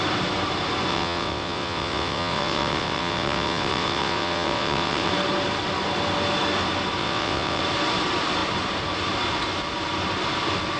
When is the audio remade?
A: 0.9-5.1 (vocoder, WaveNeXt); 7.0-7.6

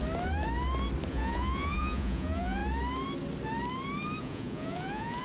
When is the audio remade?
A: 1.1-2.6 (vocoder, Vocos); 4.2-5.2

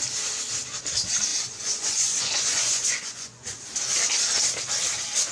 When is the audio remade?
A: 1.3-3.6 (vocoder, Vocos)

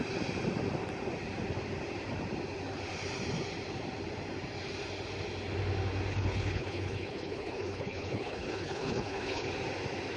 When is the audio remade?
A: 6.1-9.5 (codec, HILCodec)

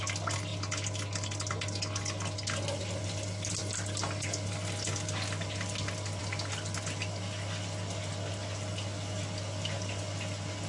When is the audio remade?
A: none